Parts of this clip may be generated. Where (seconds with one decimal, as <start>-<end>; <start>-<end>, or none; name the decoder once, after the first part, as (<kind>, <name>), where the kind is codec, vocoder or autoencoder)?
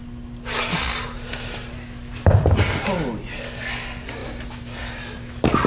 none